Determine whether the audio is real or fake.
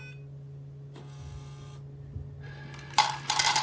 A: real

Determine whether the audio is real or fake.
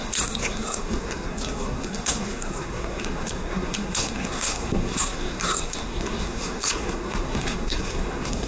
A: fake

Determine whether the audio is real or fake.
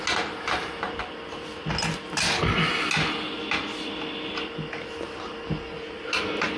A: real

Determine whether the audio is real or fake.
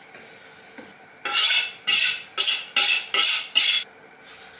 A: real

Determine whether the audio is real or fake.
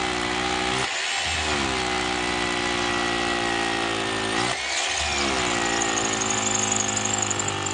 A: real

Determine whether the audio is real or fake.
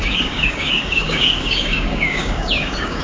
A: fake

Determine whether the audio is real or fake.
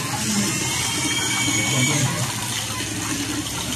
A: real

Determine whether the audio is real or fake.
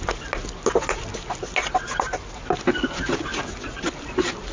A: real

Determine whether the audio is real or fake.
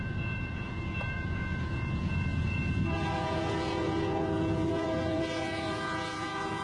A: fake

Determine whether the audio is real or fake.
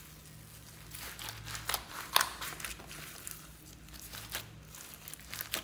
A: real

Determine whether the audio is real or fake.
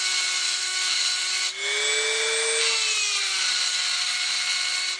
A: real